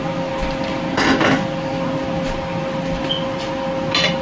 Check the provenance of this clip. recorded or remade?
recorded